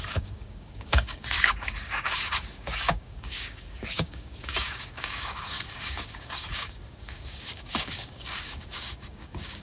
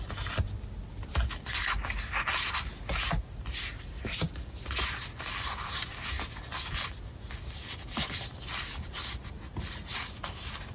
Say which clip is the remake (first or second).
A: first